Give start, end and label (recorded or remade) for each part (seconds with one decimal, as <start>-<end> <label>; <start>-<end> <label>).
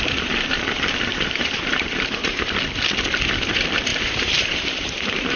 0.0-1.1 recorded; 1.1-2.5 remade; 2.5-3.9 recorded; 3.9-5.4 remade